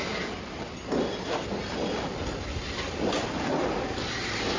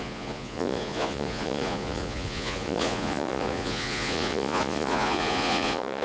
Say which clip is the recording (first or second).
first